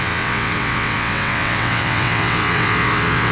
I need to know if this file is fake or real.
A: fake